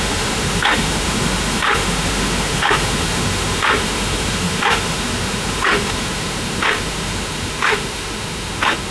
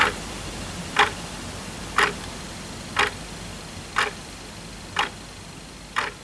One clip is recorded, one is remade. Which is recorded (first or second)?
second